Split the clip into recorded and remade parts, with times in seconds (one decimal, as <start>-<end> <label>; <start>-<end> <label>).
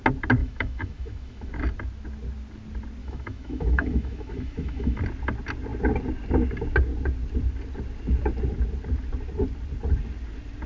0.0-0.4 recorded; 0.4-1.5 remade; 1.5-3.0 recorded; 3.0-5.0 remade; 5.0-10.7 recorded